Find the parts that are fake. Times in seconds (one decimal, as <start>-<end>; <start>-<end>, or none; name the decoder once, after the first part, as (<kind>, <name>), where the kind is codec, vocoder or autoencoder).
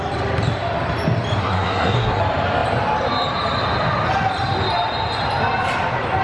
1.4-2.2 (codec, SNAC)